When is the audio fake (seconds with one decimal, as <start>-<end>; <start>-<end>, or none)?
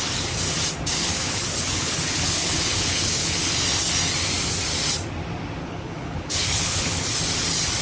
1.0-3.5; 5.6-7.2